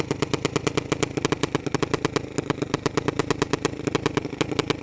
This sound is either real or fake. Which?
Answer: real